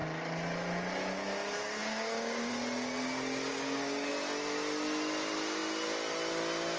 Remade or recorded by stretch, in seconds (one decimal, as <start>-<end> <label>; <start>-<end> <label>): 0.0-1.8 recorded; 1.8-2.5 remade; 2.5-3.5 recorded; 3.5-4.1 remade; 4.1-6.8 recorded